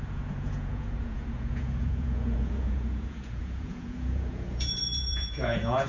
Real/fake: fake